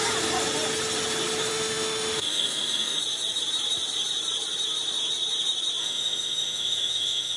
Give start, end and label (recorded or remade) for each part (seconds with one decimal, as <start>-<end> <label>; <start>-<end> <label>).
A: 0.0-1.5 recorded; 1.5-3.0 remade; 3.0-5.8 recorded; 5.8-7.4 remade